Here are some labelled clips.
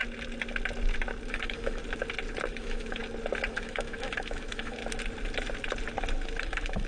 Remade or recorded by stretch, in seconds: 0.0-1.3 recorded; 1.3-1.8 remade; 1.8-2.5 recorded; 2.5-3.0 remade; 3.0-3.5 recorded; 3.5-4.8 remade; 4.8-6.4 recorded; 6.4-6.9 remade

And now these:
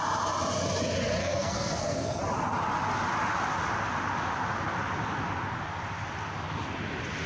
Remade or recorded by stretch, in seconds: 0.0-1.2 recorded; 1.2-2.2 remade; 2.2-7.3 recorded

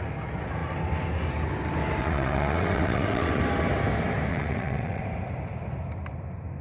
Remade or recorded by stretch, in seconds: 0.0-2.0 recorded; 2.0-3.4 remade; 3.4-4.3 recorded; 4.3-5.0 remade; 5.0-6.6 recorded

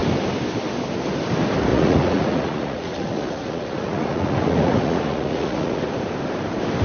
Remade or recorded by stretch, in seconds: 0.0-1.7 recorded; 1.7-5.8 remade; 5.8-6.8 recorded

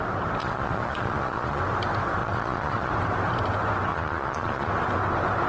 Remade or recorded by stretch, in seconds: 0.0-0.4 recorded; 0.4-1.6 remade; 1.6-2.2 recorded; 2.2-2.9 remade; 2.9-3.9 recorded; 3.9-4.7 remade; 4.7-5.5 recorded

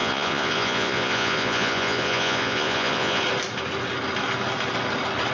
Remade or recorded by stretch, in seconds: 0.0-3.2 remade; 3.2-5.3 recorded